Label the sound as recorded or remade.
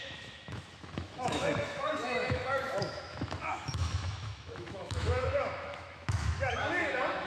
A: remade